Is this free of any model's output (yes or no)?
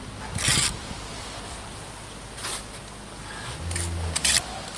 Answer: yes